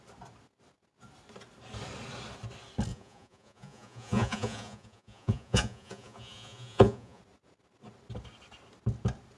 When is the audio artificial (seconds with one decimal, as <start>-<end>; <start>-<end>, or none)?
2.9-7.2